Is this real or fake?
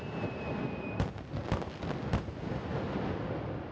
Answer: real